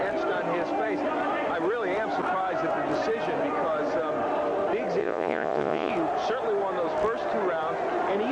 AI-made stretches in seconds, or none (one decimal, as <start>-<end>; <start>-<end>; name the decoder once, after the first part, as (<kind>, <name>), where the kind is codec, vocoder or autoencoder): 5.0-5.9 (vocoder, Vocos)